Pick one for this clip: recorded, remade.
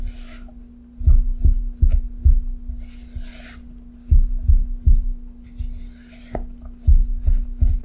recorded